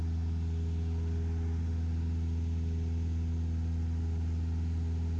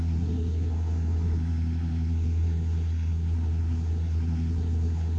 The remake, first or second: second